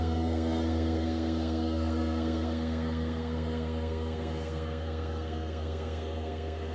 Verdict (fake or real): fake